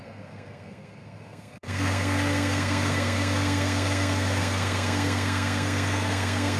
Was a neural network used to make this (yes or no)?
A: yes